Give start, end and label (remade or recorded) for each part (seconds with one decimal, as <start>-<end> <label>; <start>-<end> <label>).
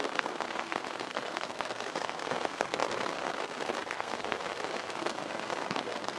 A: 0.0-6.2 remade